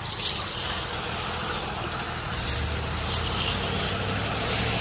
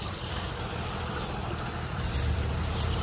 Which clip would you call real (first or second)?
first